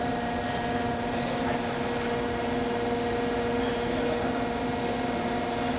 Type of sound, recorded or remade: recorded